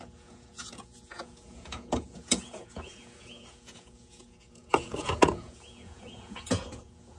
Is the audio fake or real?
fake